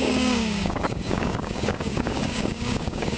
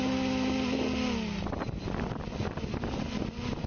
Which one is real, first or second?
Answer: second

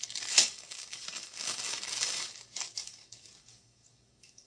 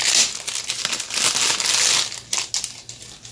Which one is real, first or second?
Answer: second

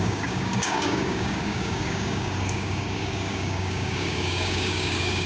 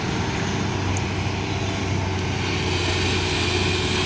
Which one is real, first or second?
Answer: second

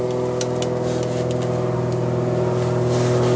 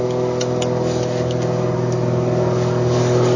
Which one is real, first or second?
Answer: first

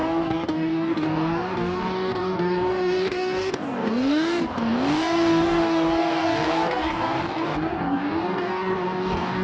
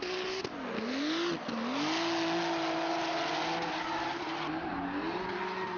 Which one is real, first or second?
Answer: second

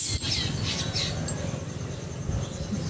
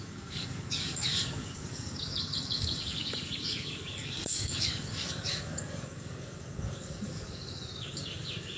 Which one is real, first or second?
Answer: first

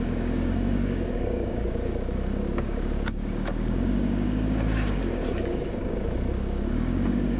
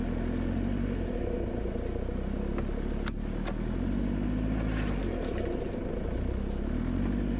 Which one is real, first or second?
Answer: second